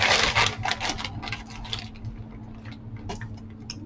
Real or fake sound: real